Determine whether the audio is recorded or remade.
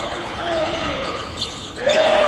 remade